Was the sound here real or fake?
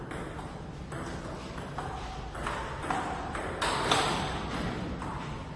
real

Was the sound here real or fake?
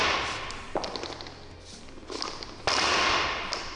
real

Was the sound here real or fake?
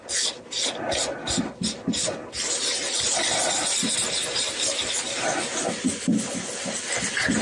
real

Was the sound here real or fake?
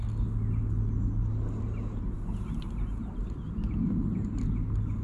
real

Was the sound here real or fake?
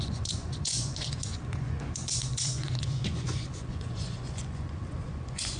fake